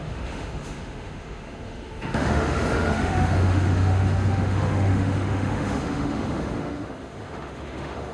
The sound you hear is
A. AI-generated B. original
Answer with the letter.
A